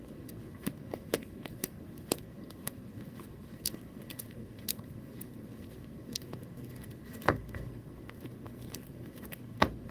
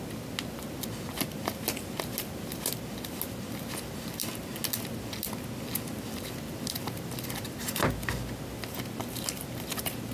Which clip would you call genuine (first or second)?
second